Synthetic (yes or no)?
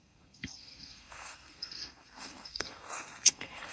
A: yes